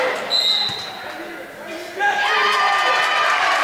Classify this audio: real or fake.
real